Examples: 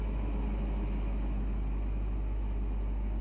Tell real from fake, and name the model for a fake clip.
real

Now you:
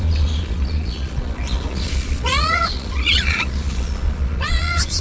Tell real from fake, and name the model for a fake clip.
fake, vocoder, Vocos